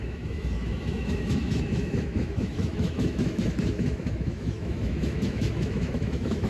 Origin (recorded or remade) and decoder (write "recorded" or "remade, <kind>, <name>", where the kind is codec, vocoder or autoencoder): remade, autoencoder, DAC-VAE